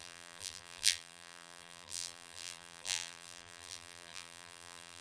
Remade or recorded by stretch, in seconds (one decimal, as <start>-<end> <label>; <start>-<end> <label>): 0.0-5.0 remade